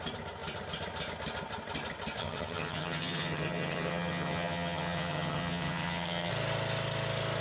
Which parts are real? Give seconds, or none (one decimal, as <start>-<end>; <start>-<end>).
0.0-2.2; 6.3-7.4